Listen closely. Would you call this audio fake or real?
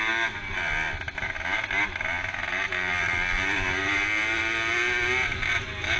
real